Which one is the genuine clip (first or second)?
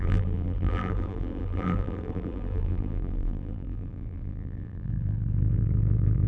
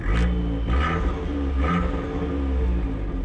second